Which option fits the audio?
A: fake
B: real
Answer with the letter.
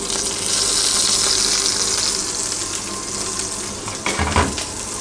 B